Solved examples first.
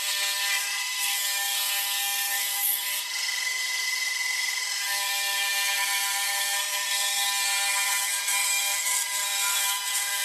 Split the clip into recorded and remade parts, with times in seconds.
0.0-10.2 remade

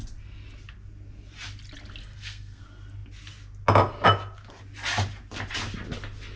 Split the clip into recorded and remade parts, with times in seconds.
0.0-2.0 recorded; 2.0-2.6 remade; 2.6-6.4 recorded